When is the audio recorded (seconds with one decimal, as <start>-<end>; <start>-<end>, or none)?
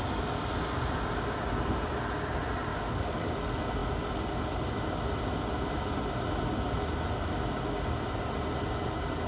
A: 0.0-2.7; 3.3-9.3